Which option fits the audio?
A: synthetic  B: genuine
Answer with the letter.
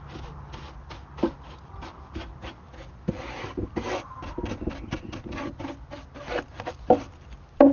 B